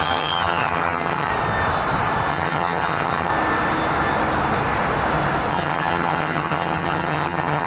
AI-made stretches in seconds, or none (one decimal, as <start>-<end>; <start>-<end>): 0.0-1.3; 2.3-3.3; 5.5-7.7